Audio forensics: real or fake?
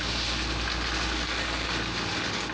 real